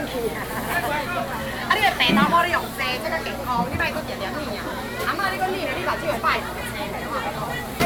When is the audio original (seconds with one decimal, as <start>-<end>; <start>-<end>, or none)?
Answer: 0.0-7.0